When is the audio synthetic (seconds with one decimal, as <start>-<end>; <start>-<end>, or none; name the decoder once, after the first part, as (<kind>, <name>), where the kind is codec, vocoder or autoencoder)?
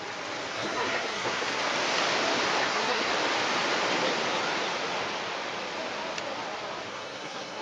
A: 0.5-1.6 (codec, SNAC); 2.6-3.1; 6.9-7.6